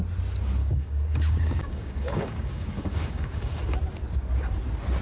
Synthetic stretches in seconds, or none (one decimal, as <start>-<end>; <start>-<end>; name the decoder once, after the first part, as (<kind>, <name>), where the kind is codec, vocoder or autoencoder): 0.6-3.6 (codec, DAC)

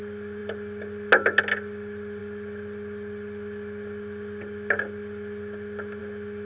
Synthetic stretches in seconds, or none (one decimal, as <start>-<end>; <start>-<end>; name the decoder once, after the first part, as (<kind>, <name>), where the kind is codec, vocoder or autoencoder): none

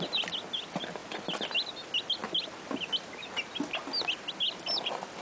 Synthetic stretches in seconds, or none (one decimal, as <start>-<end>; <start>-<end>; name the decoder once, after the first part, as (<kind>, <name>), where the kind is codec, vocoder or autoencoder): none

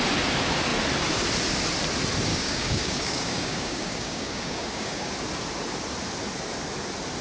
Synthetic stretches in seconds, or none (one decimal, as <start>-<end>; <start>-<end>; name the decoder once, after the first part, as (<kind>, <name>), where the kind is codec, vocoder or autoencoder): 2.3-5.1 (codec, DAC)

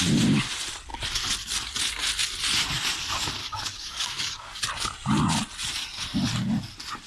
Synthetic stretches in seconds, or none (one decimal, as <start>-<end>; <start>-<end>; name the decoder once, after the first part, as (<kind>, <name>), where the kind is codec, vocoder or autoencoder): 3.4-4.6 (codec, DAC)